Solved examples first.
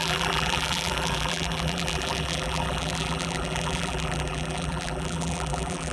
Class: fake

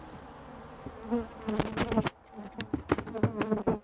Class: real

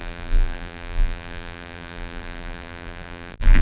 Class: fake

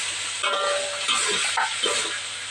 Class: real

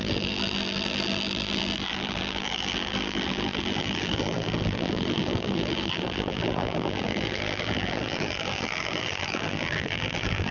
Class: fake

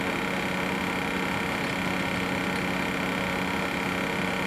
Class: real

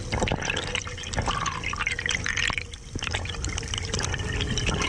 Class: real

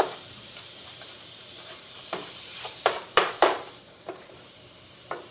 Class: fake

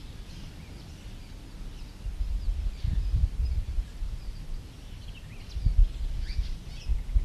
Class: real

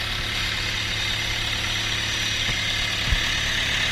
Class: real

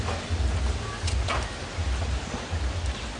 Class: real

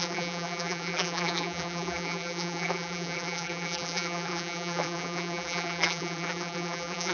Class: fake